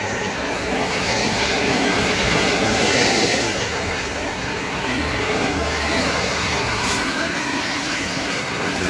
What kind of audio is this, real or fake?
fake